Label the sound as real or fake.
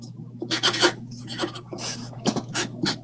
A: fake